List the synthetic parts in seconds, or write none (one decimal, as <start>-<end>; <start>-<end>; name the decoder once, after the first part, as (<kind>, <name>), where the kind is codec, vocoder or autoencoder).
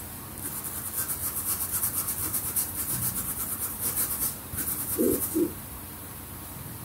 1.2-1.8 (vocoder, BigVGAN v2); 2.2-6.2